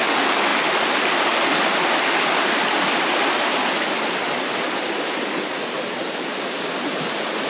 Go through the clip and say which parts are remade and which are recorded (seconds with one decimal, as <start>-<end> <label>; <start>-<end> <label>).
0.0-7.5 recorded